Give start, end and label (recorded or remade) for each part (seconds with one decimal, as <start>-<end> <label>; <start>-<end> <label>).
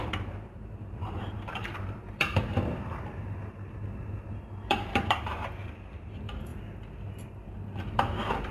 0.0-6.5 remade; 6.5-7.8 recorded; 7.8-8.5 remade